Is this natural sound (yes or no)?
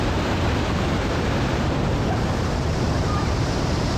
no